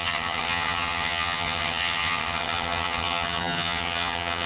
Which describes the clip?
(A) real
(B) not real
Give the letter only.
B